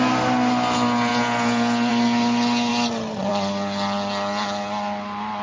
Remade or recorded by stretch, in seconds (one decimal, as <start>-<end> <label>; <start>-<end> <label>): 0.0-5.4 recorded

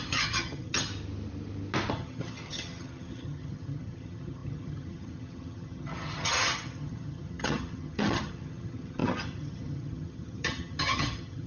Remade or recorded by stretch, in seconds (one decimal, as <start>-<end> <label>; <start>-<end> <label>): 0.0-0.9 remade; 0.9-1.9 recorded; 1.9-11.5 remade

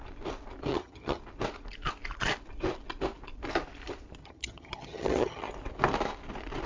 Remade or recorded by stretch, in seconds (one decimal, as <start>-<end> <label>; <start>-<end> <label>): 0.0-0.7 recorded; 0.7-1.2 remade; 1.2-4.2 recorded; 4.2-5.5 remade; 5.5-6.7 recorded

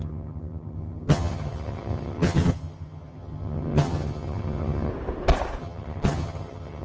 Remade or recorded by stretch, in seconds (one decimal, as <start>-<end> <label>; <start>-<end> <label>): 0.0-4.9 remade; 4.9-5.6 recorded; 5.6-6.8 remade

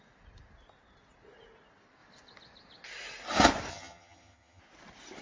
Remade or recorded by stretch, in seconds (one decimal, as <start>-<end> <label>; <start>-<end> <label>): 0.0-3.7 recorded; 3.7-4.6 remade; 4.6-5.2 recorded

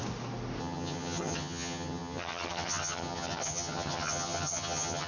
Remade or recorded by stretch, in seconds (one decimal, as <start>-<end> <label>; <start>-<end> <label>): 0.0-0.6 recorded; 0.6-5.1 remade